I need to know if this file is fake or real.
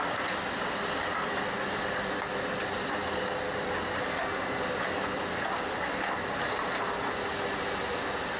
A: real